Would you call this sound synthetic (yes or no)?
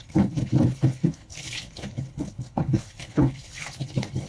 yes